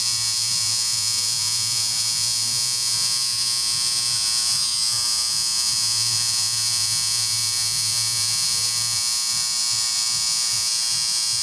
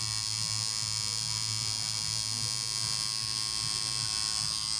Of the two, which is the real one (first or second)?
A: second